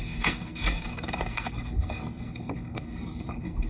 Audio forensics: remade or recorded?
remade